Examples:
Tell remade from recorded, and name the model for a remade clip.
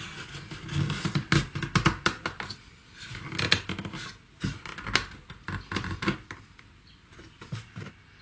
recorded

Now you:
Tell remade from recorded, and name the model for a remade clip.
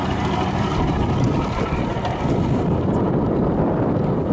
recorded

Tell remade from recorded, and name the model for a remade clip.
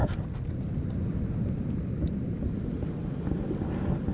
recorded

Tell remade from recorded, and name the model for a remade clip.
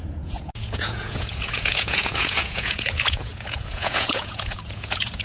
remade, vocoder, Vocos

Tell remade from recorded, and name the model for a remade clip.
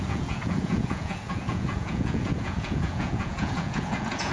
remade, vocoder, Vocos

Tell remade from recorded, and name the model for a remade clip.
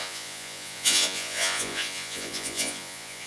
remade, vocoder, Vocos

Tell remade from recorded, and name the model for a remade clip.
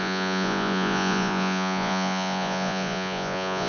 remade, vocoder, Vocos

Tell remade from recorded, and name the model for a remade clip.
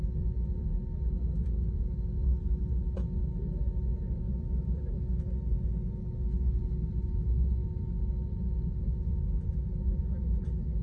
recorded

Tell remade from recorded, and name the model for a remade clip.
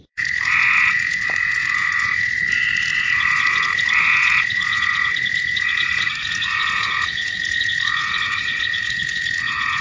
remade, vocoder, Vocos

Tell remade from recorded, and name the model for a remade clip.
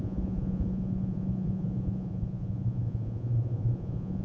remade, vocoder, Vocos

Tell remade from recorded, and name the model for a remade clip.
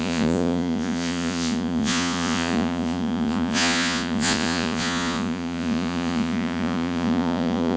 remade, vocoder, Vocos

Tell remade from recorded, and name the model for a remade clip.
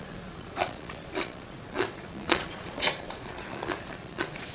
remade, vocoder, Vocos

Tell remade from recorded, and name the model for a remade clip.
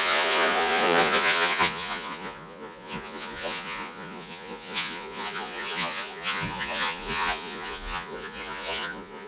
remade, vocoder, Vocos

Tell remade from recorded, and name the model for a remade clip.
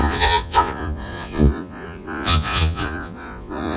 remade, vocoder, Vocos